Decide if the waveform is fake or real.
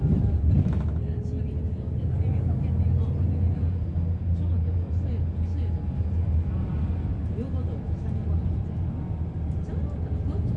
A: real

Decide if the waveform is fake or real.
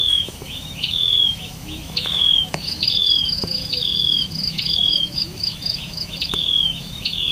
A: fake